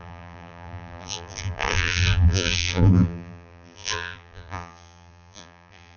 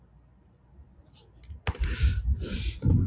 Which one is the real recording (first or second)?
second